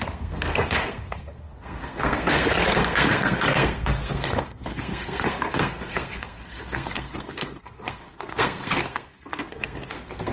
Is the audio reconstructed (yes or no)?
yes